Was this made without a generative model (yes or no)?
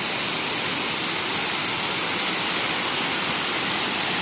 yes